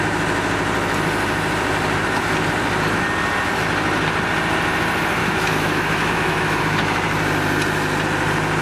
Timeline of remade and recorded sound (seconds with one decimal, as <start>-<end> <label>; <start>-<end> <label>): 0.0-5.2 recorded; 5.2-6.6 remade; 6.6-8.6 recorded